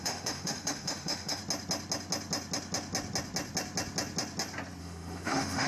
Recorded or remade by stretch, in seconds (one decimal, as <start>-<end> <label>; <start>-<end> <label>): 0.0-1.4 remade; 1.4-4.8 recorded; 4.8-5.7 remade